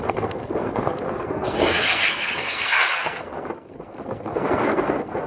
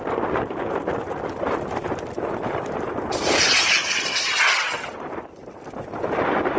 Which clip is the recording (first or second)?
second